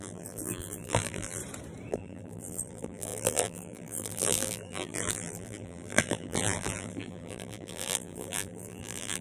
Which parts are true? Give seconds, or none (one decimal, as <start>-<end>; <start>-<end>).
1.4-1.9